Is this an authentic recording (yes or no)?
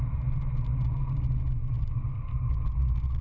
yes